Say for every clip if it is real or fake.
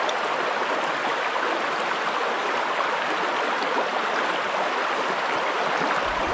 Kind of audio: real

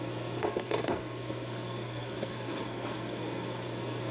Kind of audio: fake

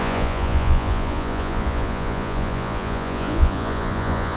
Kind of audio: fake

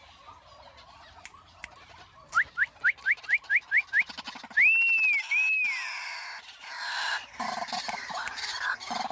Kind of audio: real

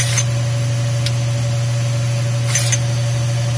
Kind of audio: real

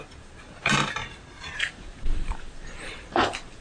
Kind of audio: fake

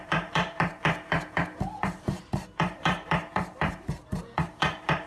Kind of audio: fake